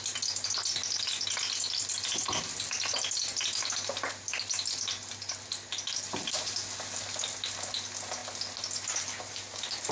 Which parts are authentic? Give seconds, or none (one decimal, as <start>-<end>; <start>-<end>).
0.0-9.9